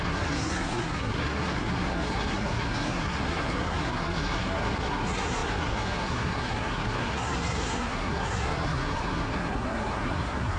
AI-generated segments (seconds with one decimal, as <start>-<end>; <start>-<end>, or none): 0.0-10.6